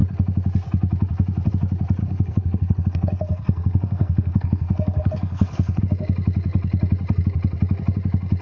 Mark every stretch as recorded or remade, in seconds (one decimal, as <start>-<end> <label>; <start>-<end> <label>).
0.0-2.0 recorded; 2.0-5.8 remade; 5.8-8.4 recorded